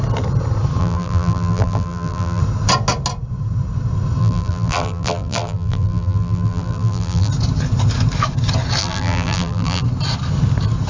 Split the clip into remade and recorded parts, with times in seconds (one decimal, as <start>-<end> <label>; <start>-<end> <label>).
0.0-0.8 recorded; 0.8-2.4 remade; 2.4-4.2 recorded; 4.2-7.3 remade; 7.3-8.8 recorded; 8.8-9.8 remade; 9.8-10.9 recorded